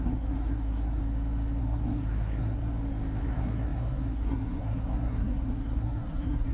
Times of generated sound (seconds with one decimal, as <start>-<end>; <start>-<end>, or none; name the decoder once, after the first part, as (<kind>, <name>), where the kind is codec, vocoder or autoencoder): 0.0-1.0 (codec, SNAC); 1.6-2.6; 3.2-6.5